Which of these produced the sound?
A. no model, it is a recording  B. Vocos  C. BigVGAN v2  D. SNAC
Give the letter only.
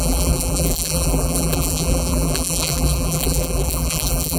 C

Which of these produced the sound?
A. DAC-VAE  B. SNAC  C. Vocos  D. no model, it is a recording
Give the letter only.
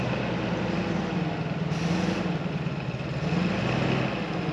D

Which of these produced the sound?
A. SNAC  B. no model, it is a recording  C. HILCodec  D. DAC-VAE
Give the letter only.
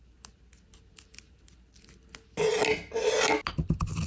B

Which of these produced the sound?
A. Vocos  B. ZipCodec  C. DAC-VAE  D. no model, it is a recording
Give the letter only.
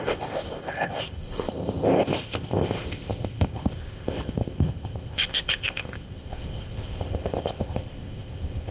B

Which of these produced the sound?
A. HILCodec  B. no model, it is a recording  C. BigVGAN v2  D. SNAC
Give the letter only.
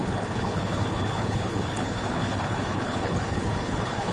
A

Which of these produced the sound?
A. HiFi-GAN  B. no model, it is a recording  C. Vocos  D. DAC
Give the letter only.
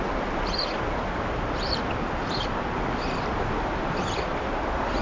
B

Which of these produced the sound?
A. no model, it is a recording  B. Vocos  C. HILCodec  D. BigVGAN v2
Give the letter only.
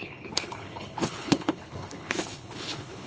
C